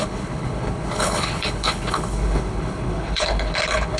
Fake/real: fake